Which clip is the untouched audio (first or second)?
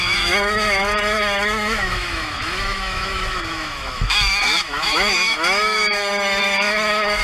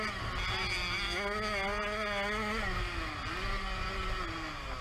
second